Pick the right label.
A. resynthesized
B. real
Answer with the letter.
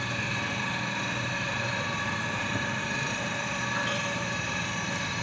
A